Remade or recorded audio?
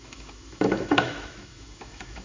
remade